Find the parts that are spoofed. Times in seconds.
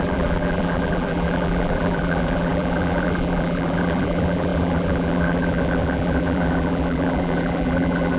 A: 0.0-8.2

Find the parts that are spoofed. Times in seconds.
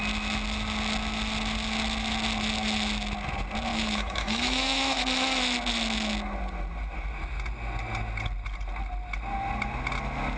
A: 3.7-5.0